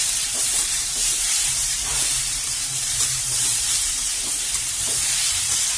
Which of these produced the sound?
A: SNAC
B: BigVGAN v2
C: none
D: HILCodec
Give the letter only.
B